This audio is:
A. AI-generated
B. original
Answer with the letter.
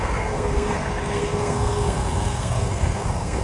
A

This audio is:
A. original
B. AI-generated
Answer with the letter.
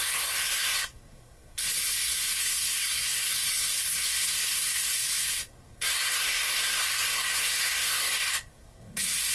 B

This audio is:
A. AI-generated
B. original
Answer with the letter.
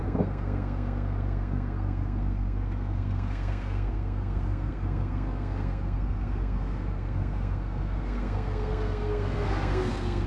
A